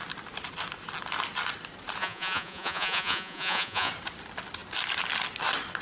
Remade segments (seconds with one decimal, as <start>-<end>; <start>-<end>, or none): 2.0-3.9